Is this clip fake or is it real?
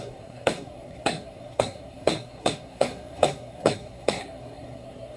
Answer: fake